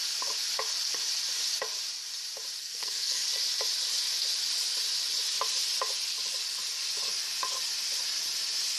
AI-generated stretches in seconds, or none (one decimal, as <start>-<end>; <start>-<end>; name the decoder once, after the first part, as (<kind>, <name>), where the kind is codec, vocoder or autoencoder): 2.6-3.2 (codec, SNAC)